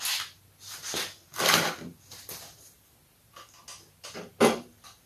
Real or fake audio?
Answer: real